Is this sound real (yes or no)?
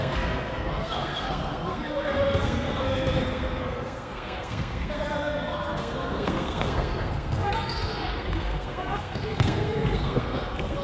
no